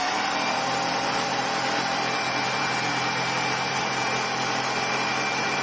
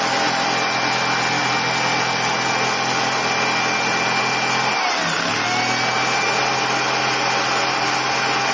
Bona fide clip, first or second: second